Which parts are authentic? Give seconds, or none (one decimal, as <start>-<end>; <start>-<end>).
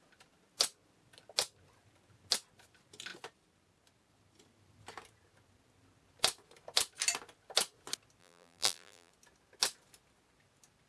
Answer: 0.0-8.2; 9.1-10.9